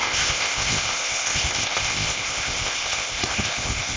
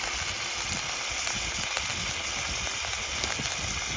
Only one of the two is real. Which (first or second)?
second